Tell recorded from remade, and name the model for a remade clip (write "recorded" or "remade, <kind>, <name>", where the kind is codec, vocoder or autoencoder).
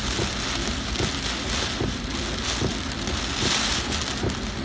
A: recorded